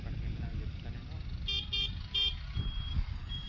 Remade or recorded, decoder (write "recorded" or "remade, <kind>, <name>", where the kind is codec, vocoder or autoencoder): recorded